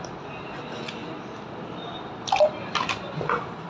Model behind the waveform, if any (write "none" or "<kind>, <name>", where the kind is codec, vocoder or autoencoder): none